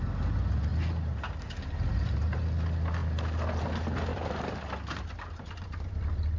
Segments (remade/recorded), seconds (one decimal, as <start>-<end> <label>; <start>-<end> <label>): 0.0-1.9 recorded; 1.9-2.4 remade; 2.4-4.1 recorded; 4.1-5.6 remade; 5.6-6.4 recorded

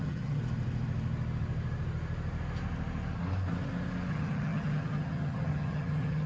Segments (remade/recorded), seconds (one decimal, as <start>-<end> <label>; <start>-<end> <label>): 0.0-0.4 remade; 0.4-4.1 recorded; 4.1-6.3 remade

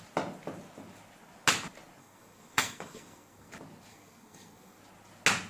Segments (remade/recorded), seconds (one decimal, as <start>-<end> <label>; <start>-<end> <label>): 0.0-2.0 recorded; 2.0-3.5 remade; 3.5-3.9 recorded; 3.9-4.8 remade; 4.8-5.5 recorded

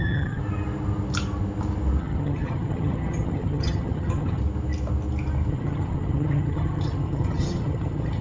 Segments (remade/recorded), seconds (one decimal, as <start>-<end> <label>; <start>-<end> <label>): 0.0-0.4 remade; 0.4-2.0 recorded; 2.0-4.4 remade; 4.4-5.5 recorded; 5.5-8.2 remade